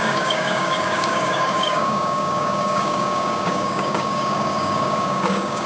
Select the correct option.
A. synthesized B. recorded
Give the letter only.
A